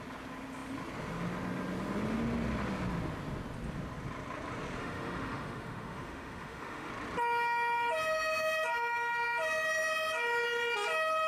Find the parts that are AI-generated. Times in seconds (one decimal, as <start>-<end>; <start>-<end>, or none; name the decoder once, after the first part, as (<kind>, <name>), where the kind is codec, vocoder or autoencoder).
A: 4.8-6.9 (autoencoder, DAC-VAE)